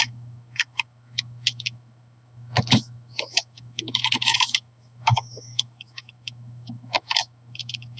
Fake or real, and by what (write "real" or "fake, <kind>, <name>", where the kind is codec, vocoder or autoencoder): fake, autoencoder, DAC-VAE